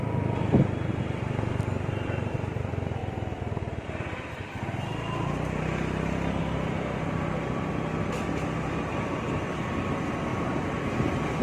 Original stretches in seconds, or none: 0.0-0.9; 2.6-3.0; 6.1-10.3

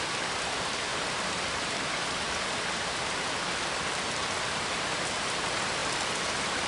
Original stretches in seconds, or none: none

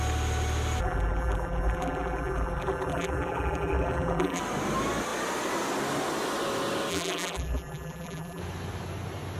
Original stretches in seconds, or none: 0.0-0.8; 4.4-6.9; 8.4-9.4

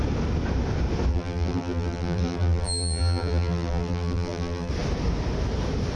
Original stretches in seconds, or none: 0.0-1.1; 4.7-6.0

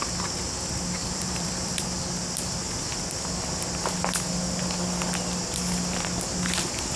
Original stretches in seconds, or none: 0.0-1.0; 1.8-7.0

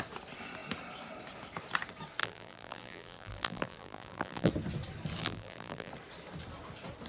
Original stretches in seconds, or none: 0.0-2.2; 4.5-5.2; 5.9-7.1

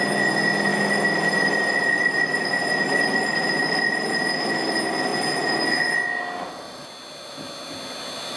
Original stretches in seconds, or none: 0.0-0.7; 4.1-8.4